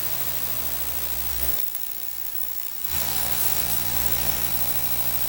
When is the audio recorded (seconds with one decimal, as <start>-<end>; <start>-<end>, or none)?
0.0-1.3; 4.5-5.3